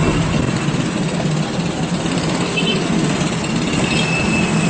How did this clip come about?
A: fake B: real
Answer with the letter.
B